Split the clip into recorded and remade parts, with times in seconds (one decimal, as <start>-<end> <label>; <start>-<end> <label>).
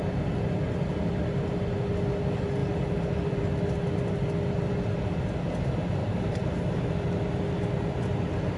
0.0-6.0 recorded; 6.0-6.8 remade; 6.8-8.6 recorded